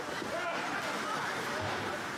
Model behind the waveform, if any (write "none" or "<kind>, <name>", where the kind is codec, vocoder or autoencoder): none